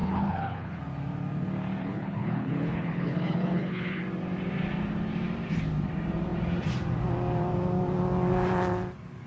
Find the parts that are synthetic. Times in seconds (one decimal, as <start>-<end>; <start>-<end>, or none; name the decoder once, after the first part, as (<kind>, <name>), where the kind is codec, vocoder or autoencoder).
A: 0.0-0.8 (codec, HILCodec); 1.8-4.0